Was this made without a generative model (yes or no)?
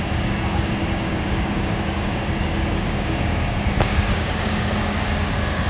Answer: no